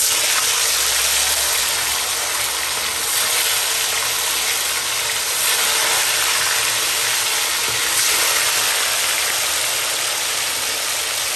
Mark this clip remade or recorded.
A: recorded